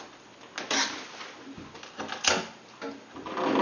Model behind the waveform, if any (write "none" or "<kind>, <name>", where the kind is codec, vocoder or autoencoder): none